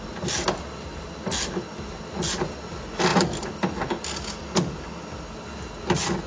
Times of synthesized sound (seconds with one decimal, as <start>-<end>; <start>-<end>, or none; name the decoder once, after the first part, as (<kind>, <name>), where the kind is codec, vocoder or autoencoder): none